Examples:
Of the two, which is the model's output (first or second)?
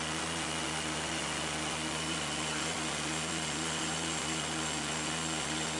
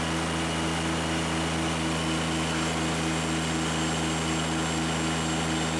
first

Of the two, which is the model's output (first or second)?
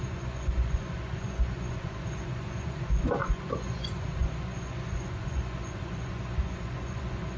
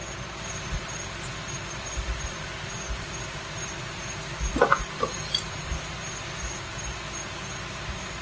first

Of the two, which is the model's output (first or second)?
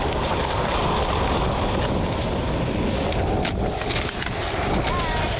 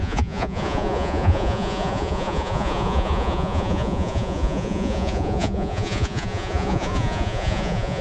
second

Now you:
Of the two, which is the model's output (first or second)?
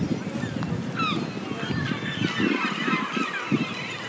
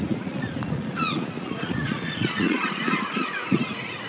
second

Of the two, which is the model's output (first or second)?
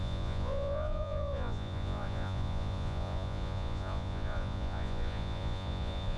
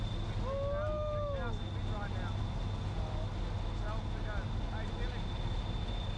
first